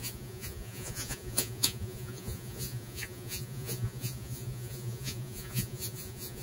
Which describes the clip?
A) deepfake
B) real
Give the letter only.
A